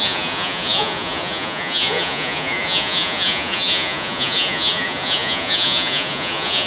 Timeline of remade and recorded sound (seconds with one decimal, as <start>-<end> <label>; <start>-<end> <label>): 0.0-6.7 remade